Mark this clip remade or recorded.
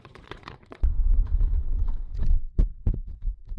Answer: remade